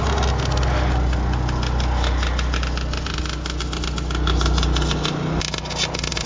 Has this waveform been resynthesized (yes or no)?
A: no